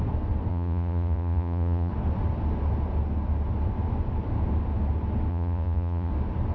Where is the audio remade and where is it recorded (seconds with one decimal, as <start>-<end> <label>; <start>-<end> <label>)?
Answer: 0.0-0.5 recorded; 0.5-1.9 remade; 1.9-5.3 recorded; 5.3-6.1 remade; 6.1-6.5 recorded